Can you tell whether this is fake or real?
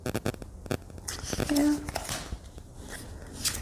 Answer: real